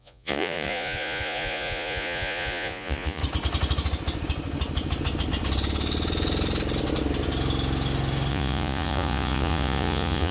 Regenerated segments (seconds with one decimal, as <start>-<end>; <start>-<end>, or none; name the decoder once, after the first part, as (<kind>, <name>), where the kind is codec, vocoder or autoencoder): 0.0-3.2 (vocoder, Vocos); 8.3-10.3